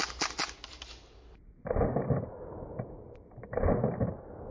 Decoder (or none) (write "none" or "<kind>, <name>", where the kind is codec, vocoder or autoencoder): none